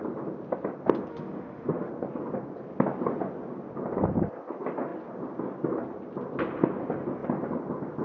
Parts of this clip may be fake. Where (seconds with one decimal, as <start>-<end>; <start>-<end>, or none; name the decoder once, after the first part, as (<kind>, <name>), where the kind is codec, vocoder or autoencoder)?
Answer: 1.1-1.9 (autoencoder, DAC-VAE)